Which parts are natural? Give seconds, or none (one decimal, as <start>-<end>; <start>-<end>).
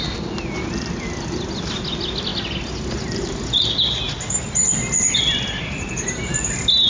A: 0.0-6.9